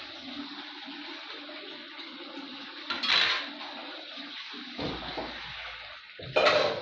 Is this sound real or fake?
real